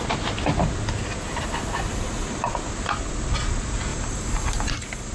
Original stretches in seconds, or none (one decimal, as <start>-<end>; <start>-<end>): 0.0-1.9; 2.5-3.9